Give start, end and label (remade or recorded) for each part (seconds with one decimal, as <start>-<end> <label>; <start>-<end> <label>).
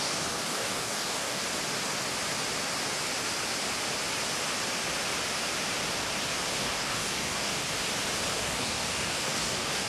0.0-1.4 remade; 1.4-6.6 recorded; 6.6-7.5 remade; 7.5-8.3 recorded; 8.3-9.9 remade